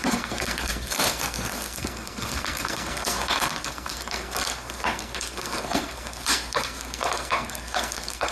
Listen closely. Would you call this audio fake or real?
fake